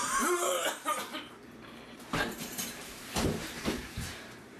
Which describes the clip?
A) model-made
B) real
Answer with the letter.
A